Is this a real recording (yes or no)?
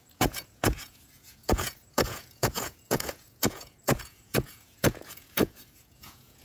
no